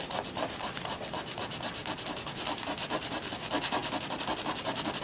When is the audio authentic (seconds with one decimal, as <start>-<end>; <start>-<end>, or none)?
0.0-5.0